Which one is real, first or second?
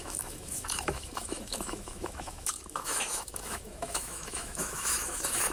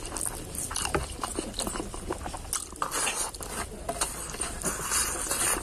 second